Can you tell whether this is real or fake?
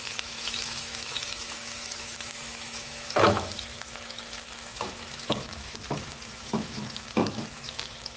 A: fake